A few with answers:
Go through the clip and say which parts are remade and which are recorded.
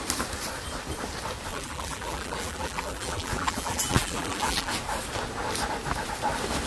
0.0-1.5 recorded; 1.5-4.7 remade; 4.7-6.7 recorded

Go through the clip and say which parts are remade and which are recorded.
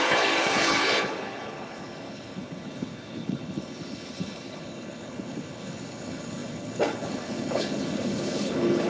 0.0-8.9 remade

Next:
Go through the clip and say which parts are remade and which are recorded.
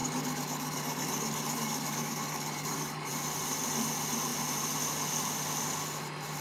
0.0-3.1 remade; 3.1-6.4 recorded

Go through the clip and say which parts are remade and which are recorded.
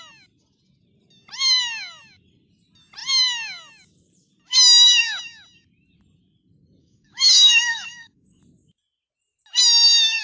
0.0-6.8 recorded; 6.8-8.4 remade; 8.4-10.2 recorded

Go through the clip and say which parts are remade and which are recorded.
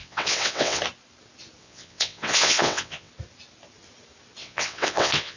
0.0-0.8 remade; 0.8-1.6 recorded; 1.6-3.1 remade; 3.1-4.4 recorded; 4.4-5.4 remade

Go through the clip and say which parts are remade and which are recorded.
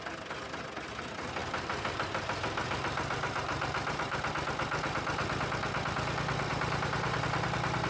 0.0-1.4 recorded; 1.4-4.3 remade; 4.3-6.5 recorded; 6.5-7.2 remade; 7.2-7.9 recorded